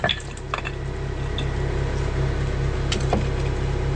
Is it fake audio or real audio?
real